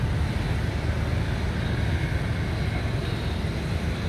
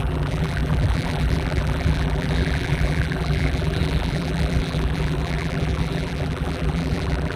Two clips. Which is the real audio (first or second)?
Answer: first